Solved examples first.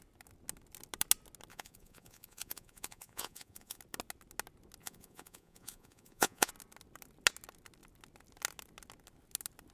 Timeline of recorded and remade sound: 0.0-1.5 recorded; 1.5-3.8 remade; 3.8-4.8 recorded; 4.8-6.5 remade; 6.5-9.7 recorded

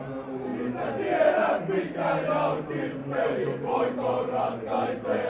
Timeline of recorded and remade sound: 0.0-3.0 recorded; 3.0-3.8 remade; 3.8-5.3 recorded

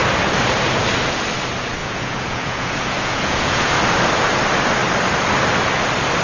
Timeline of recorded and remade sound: 0.0-1.8 recorded; 1.8-3.7 remade; 3.7-6.2 recorded

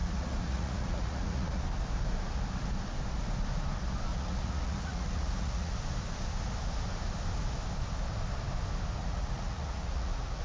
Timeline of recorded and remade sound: 0.0-1.6 remade; 1.6-4.1 recorded; 4.1-5.8 remade; 5.8-9.0 recorded; 9.0-10.4 remade

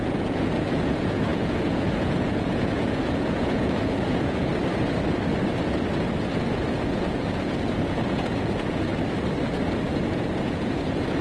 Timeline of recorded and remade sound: 0.0-4.5 remade; 4.5-6.7 recorded; 6.7-8.9 remade; 8.9-10.1 recorded; 10.1-11.2 remade